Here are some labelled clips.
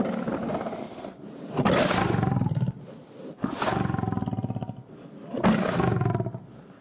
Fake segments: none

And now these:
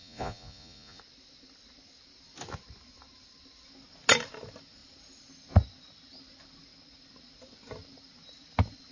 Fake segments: 0.0-1.0 (vocoder, Vocos)